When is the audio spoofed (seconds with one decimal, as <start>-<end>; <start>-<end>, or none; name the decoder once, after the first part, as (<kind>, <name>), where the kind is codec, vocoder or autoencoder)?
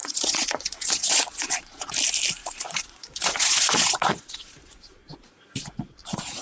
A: 0.0-1.9 (vocoder, Vocos); 2.4-6.4